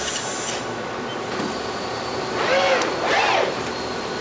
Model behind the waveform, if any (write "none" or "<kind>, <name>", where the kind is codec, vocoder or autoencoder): none